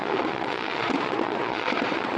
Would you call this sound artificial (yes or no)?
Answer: yes